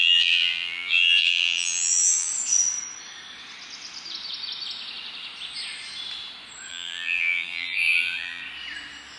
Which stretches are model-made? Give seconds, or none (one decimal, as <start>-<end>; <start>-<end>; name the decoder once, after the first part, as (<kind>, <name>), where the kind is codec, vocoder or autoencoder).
0.0-2.3 (vocoder, BigVGAN v2); 6.7-8.4